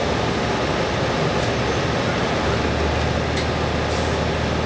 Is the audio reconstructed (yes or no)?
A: no